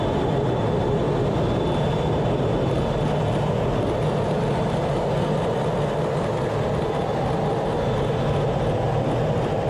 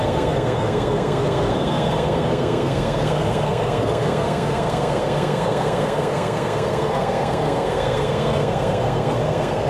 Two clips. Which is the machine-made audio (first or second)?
second